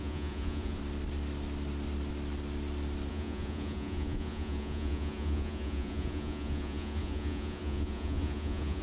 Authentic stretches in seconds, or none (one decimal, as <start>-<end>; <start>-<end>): 0.8-3.1